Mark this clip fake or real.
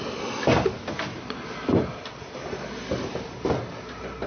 real